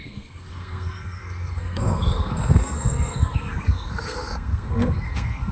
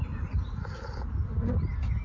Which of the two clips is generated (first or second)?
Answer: first